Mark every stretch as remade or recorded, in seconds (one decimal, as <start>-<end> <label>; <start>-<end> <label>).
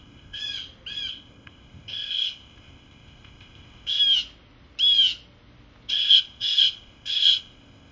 0.0-0.4 remade; 0.4-1.1 recorded; 1.1-4.0 remade; 4.0-5.9 recorded; 5.9-7.9 remade